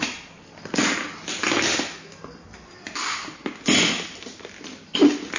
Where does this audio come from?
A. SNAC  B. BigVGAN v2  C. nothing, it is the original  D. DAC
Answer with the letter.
C